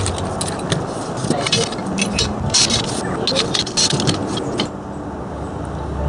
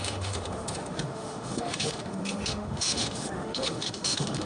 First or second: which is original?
first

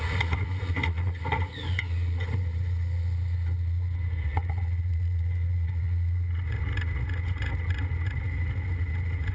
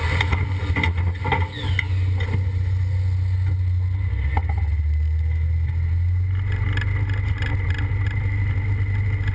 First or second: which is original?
second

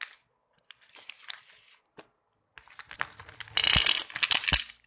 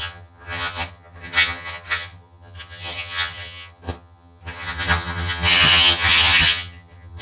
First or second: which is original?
first